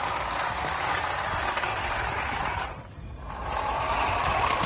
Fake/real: real